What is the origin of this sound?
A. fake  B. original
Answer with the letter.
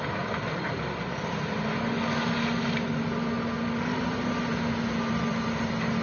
B